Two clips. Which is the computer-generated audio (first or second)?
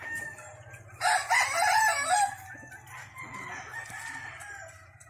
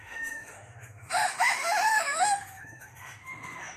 second